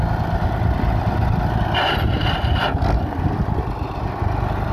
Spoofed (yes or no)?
no